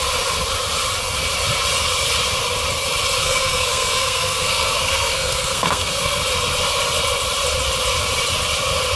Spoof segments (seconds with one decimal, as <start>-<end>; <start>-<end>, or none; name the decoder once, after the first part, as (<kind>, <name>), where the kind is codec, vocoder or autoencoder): 3.2-6.2 (codec, SNAC)